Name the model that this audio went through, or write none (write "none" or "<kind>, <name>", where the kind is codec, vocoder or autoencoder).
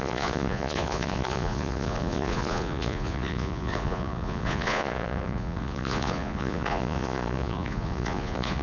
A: vocoder, Vocos